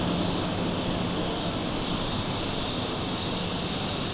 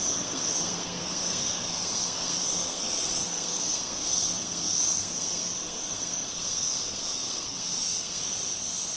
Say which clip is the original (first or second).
first